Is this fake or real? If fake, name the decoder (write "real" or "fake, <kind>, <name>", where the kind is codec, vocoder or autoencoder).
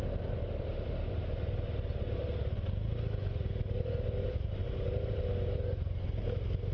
real